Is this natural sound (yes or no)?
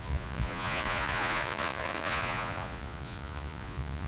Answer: no